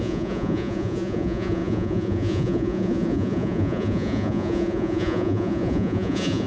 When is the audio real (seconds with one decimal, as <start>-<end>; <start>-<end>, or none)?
none